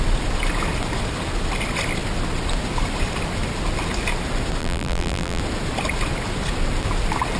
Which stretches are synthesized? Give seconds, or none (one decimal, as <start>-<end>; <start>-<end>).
4.6-5.4